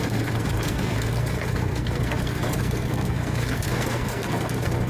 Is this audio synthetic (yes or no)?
yes